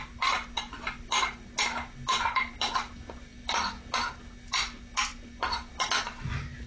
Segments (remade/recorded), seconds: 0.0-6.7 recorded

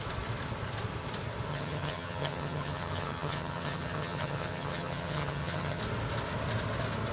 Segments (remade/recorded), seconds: 0.0-1.5 recorded; 1.5-5.8 remade; 5.8-7.1 recorded